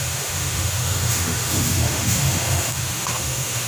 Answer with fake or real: fake